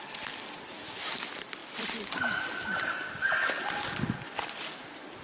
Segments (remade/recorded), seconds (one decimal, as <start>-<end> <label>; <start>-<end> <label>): 0.0-1.6 recorded; 1.6-3.6 remade; 3.6-5.2 recorded